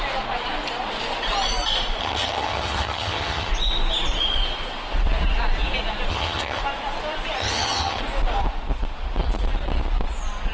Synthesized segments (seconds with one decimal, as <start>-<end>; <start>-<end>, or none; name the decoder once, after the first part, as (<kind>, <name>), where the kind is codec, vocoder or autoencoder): 2.0-3.5 (vocoder, HiFi-GAN); 6.1-6.6; 7.4-8.0